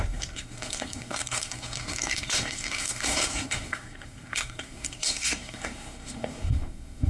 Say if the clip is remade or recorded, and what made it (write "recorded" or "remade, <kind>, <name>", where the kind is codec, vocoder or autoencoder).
remade, codec, SNAC